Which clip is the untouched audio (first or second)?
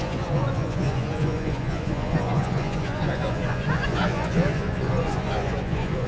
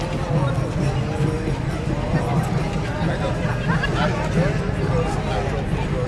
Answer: second